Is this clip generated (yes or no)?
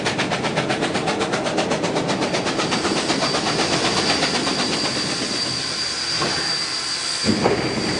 no